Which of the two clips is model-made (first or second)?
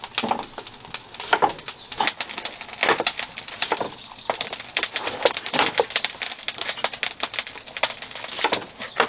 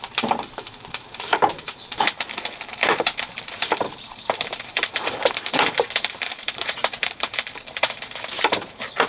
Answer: second